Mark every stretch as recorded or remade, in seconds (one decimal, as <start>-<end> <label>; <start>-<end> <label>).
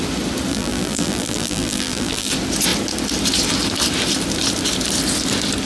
0.0-0.5 recorded; 0.5-2.3 remade; 2.3-5.7 recorded